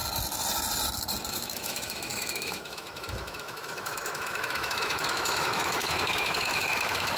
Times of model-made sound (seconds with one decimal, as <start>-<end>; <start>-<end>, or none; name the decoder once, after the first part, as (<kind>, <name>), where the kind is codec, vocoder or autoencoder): 1.3-7.2 (autoencoder, DAC-VAE)